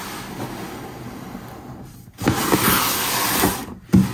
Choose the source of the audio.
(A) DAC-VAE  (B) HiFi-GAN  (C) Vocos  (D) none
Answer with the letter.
D